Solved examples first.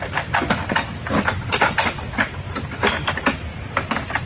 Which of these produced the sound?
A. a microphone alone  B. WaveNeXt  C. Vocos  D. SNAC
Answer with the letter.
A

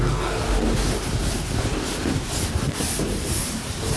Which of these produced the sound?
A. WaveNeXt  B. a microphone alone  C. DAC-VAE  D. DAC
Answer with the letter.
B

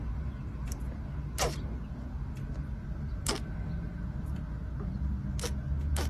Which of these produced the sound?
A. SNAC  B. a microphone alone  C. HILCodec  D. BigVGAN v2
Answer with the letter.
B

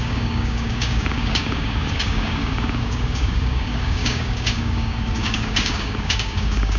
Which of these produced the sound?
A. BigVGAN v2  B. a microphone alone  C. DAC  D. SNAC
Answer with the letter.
C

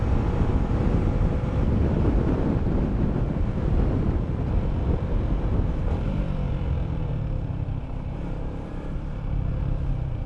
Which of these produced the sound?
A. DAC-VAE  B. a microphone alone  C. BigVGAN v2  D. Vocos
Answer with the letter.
C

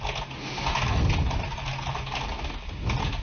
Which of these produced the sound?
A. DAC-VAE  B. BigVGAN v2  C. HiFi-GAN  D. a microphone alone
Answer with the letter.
D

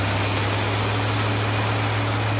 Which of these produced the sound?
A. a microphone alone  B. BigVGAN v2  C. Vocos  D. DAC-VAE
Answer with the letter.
A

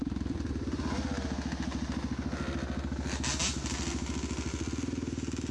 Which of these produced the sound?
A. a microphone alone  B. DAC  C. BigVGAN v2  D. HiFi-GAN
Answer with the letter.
A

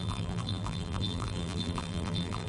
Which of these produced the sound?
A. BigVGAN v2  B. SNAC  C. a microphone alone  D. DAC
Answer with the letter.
A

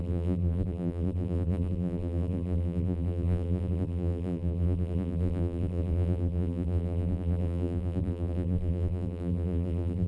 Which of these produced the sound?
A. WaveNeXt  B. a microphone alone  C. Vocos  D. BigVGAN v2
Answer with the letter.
D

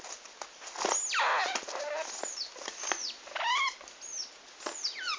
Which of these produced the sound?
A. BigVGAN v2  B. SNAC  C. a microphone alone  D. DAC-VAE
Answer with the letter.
C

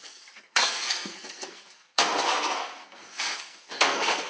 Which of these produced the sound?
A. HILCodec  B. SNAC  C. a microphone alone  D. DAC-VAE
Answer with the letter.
B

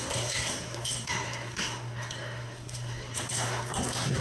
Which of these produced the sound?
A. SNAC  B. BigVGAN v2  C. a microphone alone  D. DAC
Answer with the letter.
A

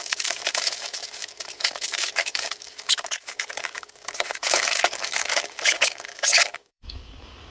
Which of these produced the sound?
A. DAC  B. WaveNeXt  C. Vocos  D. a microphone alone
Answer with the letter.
A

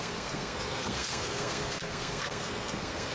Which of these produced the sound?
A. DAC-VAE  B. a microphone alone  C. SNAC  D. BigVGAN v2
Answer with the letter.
C